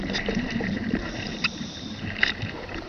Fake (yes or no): yes